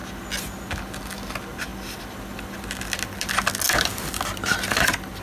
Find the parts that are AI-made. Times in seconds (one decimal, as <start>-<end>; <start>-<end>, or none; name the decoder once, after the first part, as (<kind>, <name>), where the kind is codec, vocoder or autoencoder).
none